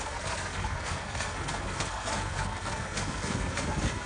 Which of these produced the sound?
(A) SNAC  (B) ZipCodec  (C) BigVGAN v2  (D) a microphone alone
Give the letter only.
A